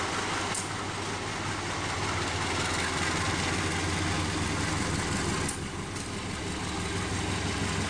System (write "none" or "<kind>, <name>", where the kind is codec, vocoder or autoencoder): none